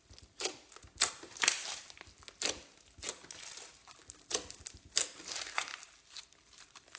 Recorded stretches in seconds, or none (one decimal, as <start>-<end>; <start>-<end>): 0.0-7.0